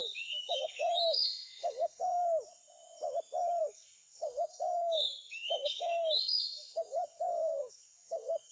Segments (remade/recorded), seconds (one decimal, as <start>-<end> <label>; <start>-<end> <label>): 0.0-2.2 remade; 2.2-3.6 recorded; 3.6-8.5 remade